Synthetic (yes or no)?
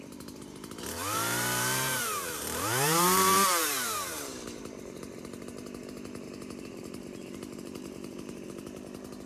yes